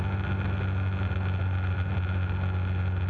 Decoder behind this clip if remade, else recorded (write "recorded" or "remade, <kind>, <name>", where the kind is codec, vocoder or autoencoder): recorded